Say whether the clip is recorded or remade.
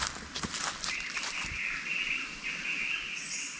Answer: recorded